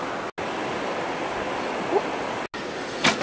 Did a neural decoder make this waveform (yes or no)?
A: no